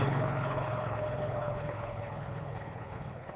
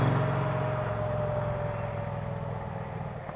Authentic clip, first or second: second